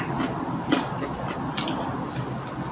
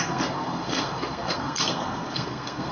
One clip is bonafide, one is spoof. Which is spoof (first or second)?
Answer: second